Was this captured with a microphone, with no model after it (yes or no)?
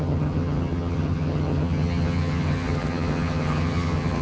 no